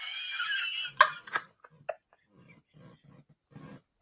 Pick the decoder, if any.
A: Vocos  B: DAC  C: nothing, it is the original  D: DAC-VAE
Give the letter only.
C